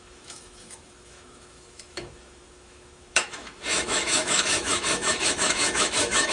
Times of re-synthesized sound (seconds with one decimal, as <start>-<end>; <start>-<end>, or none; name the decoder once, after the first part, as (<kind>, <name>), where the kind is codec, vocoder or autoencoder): 0.0-6.3 (autoencoder, DAC-VAE)